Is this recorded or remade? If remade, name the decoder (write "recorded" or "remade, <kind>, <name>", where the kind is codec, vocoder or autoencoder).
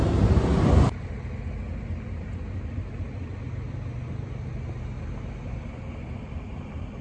recorded